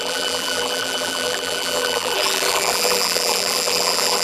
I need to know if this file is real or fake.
fake